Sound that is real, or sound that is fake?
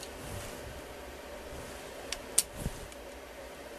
real